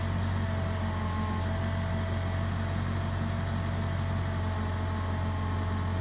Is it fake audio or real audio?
real